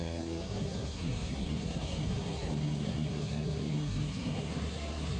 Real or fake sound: fake